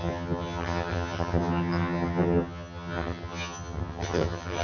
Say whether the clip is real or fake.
fake